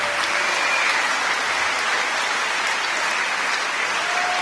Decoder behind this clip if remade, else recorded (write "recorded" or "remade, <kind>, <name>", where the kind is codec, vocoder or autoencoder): recorded